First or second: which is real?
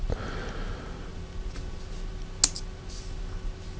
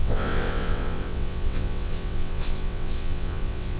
first